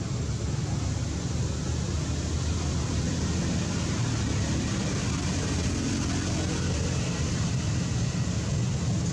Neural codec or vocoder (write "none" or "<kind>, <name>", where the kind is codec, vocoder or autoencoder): none